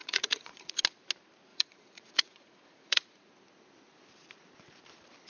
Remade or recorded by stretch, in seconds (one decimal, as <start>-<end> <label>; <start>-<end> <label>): 0.0-0.8 remade; 0.8-1.5 recorded; 1.5-3.3 remade; 3.3-5.3 recorded